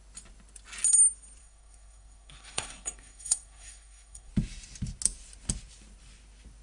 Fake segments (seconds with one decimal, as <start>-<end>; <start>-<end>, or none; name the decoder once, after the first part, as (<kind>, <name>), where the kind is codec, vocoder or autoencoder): 1.4-4.3 (codec, SNAC)